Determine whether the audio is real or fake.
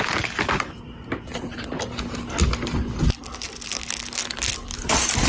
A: real